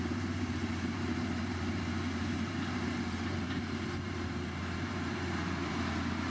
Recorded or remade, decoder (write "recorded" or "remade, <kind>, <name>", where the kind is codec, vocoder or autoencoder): remade, vocoder, BigVGAN v2